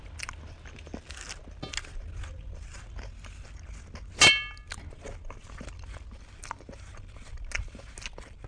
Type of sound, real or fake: real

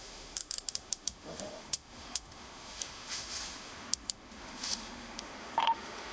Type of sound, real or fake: fake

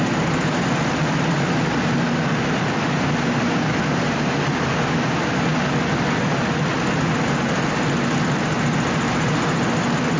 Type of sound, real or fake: real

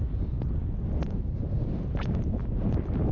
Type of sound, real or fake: real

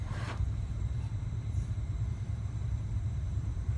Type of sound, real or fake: fake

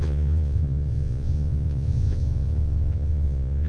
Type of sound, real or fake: fake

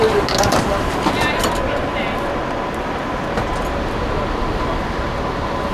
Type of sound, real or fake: real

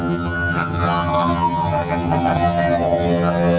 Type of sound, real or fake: fake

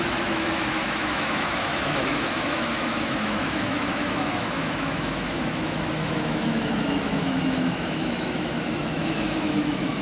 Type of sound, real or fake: fake